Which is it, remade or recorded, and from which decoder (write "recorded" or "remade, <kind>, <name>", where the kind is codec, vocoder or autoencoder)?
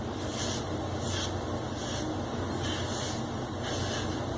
recorded